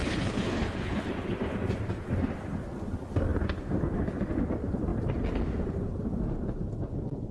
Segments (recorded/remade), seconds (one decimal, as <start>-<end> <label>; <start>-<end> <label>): 0.0-1.1 remade; 1.1-7.3 recorded